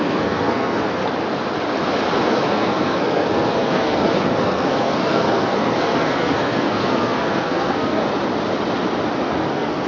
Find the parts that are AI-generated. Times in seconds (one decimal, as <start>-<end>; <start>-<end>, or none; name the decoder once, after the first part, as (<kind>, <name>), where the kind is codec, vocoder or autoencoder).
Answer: 0.0-1.0 (codec, SNAC); 2.3-8.0; 9.5-9.9